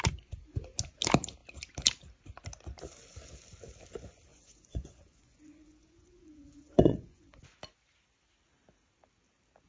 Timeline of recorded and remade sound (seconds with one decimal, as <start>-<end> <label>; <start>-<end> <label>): 0.0-4.3 recorded; 4.3-7.4 remade; 7.4-9.7 recorded